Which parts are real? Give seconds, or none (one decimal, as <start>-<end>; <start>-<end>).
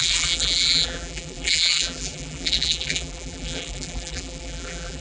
none